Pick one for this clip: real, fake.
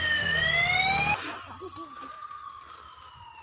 real